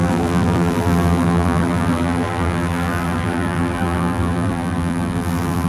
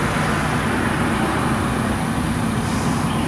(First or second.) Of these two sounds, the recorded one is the second